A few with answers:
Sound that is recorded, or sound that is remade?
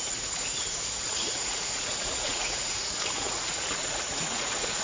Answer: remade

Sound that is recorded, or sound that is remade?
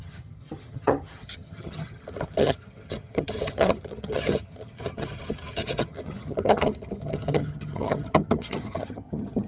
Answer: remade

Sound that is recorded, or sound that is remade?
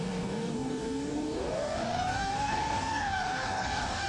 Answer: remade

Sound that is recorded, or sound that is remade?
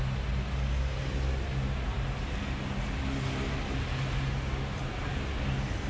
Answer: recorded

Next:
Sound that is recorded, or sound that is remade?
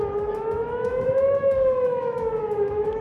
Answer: remade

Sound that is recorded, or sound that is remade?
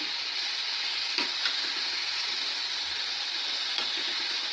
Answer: recorded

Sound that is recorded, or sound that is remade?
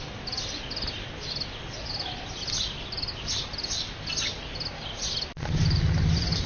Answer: recorded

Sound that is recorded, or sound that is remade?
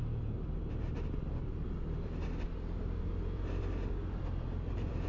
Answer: remade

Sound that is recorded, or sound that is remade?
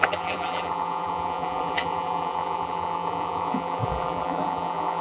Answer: remade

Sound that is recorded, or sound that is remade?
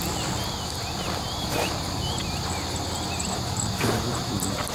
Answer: recorded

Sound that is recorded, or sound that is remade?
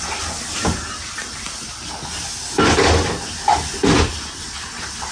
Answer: recorded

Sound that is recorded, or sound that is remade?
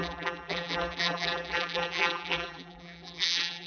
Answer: remade